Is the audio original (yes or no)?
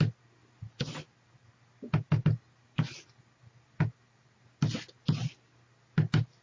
yes